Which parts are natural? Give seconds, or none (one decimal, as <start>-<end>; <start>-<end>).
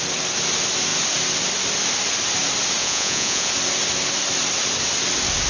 0.0-2.8; 3.5-5.5